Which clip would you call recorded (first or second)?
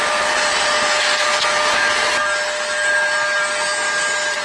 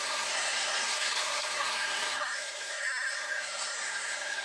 first